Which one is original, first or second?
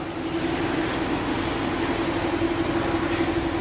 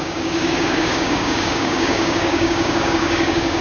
first